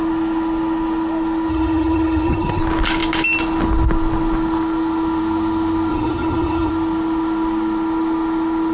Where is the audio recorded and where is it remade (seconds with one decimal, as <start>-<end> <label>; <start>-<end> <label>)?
0.0-1.5 recorded; 1.5-2.6 remade; 2.6-5.9 recorded; 5.9-6.7 remade; 6.7-8.7 recorded